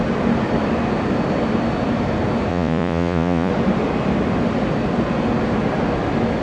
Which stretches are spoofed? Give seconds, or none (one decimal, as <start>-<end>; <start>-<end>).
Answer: 2.5-3.5